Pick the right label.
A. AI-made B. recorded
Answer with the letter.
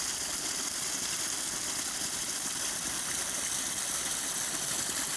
B